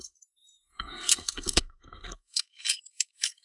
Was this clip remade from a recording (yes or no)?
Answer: yes